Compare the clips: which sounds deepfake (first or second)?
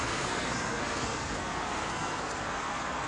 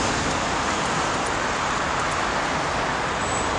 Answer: first